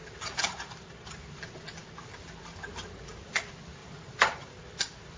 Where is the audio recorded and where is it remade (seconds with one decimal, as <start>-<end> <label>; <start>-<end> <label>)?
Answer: 0.0-1.4 remade; 1.4-3.8 recorded; 3.8-4.5 remade; 4.5-5.2 recorded